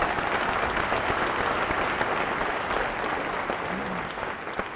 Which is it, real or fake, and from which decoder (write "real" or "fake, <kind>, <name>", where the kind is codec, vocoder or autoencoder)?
real